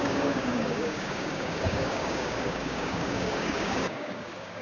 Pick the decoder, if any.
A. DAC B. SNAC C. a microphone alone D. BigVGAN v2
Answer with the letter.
A